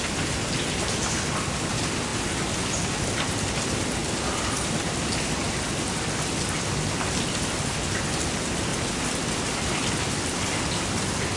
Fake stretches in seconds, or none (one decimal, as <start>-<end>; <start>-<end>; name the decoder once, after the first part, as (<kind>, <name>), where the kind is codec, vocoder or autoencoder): 4.0-5.1 (vocoder, BigVGAN v2); 8.7-10.4